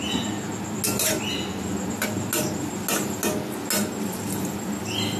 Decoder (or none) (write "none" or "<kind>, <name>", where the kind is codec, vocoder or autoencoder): none